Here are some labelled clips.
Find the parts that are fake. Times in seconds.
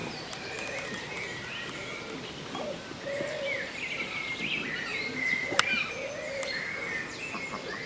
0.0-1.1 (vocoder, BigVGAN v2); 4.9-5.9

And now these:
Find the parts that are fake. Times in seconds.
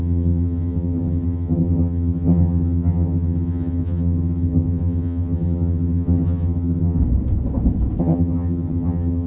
0.0-7.0 (vocoder, HiFi-GAN); 8.0-9.3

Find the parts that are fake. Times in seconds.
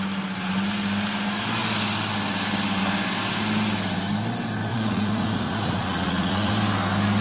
4.7-6.5 (vocoder, Vocos)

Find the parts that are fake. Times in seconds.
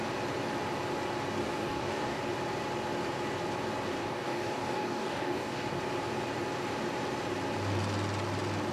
1.4-2.2 (codec, DAC); 4.0-5.8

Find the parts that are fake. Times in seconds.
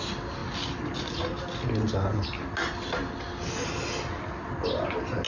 none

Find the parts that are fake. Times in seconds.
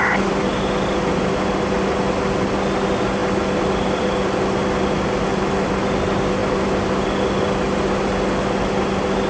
none